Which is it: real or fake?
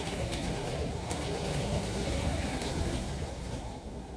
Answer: fake